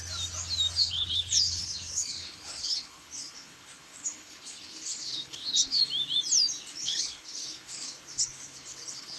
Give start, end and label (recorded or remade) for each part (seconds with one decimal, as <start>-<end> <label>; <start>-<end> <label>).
0.0-0.8 recorded; 0.8-5.8 remade; 5.8-6.7 recorded; 6.7-9.2 remade